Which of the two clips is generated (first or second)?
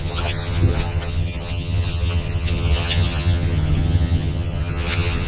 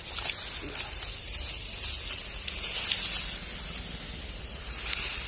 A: first